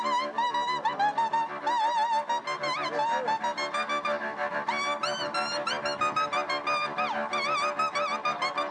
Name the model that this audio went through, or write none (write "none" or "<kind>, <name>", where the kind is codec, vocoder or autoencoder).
none